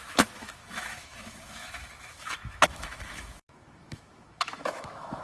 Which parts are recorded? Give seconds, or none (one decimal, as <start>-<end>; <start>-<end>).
none